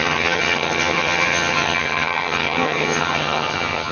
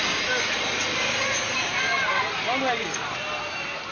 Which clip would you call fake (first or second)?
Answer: first